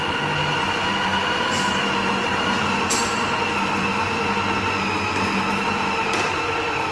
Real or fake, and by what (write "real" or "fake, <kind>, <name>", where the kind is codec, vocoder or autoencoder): real